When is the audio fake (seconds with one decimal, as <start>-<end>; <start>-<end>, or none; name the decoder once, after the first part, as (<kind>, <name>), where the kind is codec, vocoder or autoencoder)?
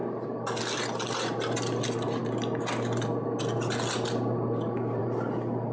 none